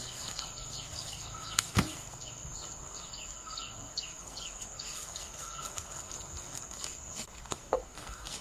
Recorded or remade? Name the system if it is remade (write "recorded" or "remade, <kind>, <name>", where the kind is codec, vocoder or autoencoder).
remade, codec, SNAC